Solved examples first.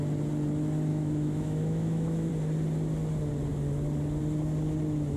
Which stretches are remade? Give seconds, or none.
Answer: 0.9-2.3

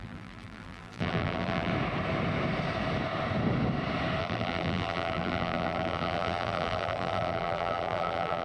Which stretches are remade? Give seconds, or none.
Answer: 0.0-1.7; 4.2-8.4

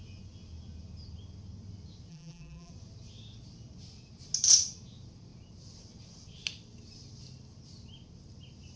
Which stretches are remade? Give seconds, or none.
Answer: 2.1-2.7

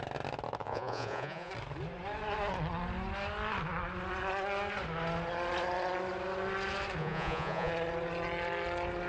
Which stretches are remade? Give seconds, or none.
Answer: 0.6-1.5; 7.0-7.7

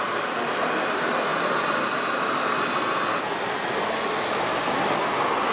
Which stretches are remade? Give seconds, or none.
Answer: none

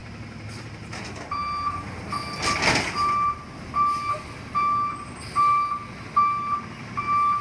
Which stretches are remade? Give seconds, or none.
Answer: none